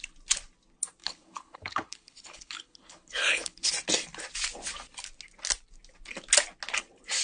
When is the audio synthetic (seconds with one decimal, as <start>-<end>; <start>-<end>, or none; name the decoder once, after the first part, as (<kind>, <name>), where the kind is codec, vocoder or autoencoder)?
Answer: 1.0-3.7 (codec, HILCodec)